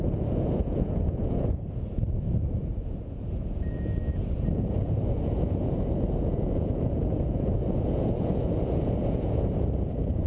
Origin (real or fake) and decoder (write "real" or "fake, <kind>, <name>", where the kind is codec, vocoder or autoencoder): fake, vocoder, Vocos